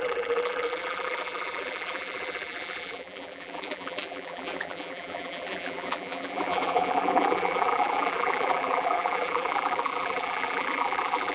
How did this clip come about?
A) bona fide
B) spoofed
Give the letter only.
B